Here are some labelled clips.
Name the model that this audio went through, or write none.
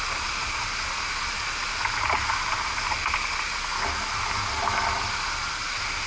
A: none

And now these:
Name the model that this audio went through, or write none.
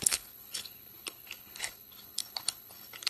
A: codec, HILCodec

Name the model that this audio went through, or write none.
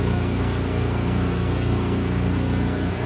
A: codec, SNAC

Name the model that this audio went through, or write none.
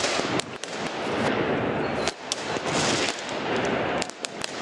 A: none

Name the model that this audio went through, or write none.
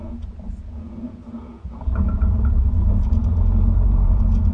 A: vocoder, Vocos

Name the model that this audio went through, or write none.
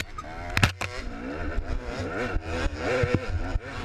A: none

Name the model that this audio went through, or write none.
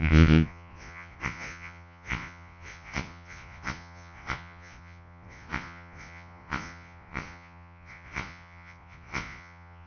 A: vocoder, Vocos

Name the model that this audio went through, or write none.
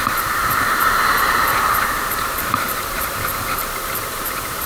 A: vocoder, BigVGAN v2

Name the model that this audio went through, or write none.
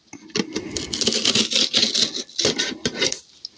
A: none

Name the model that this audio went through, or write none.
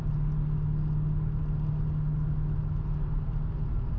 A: none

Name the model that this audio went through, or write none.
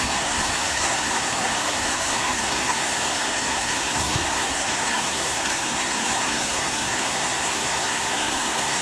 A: codec, SNAC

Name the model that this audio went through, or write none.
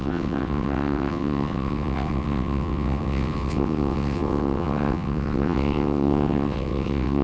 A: vocoder, WaveNeXt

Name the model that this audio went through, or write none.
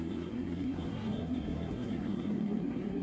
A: codec, SNAC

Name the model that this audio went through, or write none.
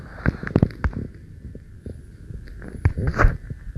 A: none